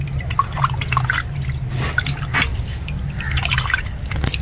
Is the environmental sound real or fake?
real